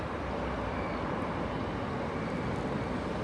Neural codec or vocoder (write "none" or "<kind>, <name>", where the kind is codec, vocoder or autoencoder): none